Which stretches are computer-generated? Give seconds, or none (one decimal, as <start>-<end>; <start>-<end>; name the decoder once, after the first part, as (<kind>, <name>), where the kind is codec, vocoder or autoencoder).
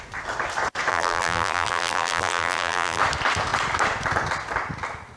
0.9-3.0 (vocoder, BigVGAN v2)